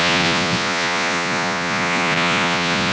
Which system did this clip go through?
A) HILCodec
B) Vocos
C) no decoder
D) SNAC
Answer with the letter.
B